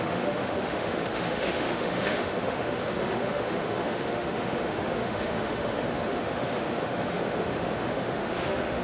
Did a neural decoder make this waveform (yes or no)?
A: yes